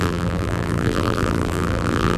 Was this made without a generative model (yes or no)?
no